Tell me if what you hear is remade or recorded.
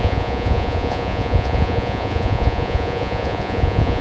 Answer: remade